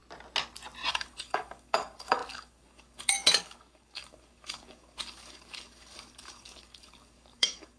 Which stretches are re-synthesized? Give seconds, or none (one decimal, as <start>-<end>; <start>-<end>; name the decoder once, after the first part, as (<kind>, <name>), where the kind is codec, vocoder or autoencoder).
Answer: 0.9-7.8 (codec, DAC)

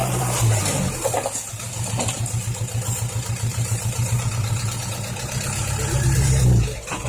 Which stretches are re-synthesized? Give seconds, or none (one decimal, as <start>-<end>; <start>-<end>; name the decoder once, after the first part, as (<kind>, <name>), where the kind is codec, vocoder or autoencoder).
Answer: 0.0-0.6 (vocoder, BigVGAN v2); 3.5-4.8

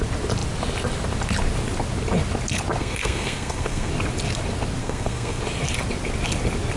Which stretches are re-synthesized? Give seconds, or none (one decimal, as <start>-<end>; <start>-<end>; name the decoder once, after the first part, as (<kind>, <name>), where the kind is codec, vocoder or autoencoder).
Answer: 2.8-3.9 (codec, SNAC); 4.8-5.4

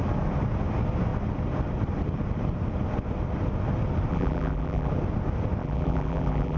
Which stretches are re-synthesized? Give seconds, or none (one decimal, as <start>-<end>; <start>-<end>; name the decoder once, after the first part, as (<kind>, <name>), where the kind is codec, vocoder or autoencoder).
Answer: 4.1-4.9 (vocoder, BigVGAN v2); 5.6-6.6

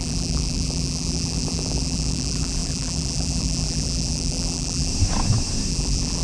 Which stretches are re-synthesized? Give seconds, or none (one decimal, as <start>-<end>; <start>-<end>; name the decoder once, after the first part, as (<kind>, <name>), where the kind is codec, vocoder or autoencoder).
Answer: 0.0-4.9 (vocoder, BigVGAN v2); 5.7-6.2

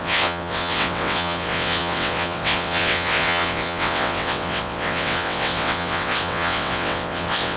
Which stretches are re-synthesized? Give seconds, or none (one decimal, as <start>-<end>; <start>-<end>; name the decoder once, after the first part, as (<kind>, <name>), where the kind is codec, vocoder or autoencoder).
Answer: 0.0-7.6 (vocoder, WaveNeXt)

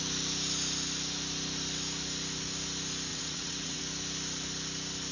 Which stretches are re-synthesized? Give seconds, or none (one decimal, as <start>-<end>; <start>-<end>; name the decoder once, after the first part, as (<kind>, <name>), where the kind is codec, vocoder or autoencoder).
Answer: 3.1-3.8 (vocoder, WaveNeXt)